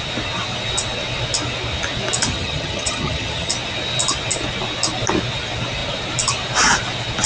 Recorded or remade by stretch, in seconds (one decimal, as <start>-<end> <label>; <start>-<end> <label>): 0.0-2.3 recorded; 2.3-3.5 remade; 3.5-7.3 recorded